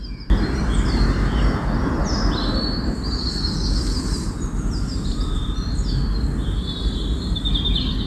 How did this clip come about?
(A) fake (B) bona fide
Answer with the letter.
B